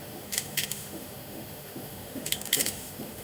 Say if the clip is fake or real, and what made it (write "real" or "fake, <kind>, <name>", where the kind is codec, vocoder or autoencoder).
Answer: fake, autoencoder, DAC-VAE